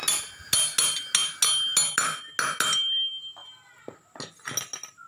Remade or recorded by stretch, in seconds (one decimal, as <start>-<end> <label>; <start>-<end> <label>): 0.0-5.1 recorded